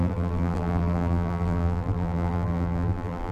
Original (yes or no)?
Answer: no